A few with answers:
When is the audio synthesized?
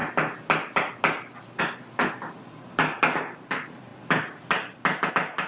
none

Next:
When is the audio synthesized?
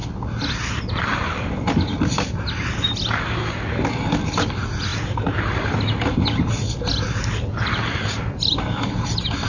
none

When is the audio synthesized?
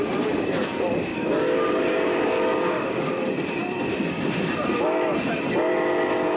1.1-3.1 (codec, DAC)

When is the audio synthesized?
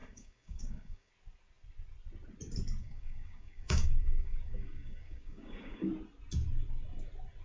0.0-1.1 (codec, DAC); 2.8-5.9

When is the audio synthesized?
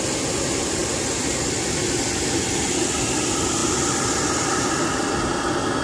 none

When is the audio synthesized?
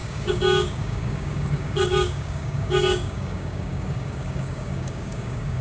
0.0-5.6 (codec, DAC)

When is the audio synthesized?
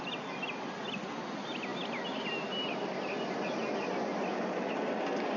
none